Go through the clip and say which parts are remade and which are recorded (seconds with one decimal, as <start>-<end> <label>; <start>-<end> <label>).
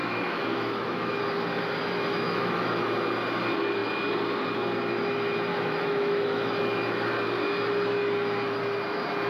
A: 0.0-1.2 remade; 1.2-2.1 recorded; 2.1-2.8 remade; 2.8-5.5 recorded; 5.5-6.6 remade; 6.6-9.3 recorded